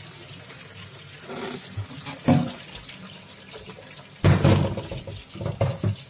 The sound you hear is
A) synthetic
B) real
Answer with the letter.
B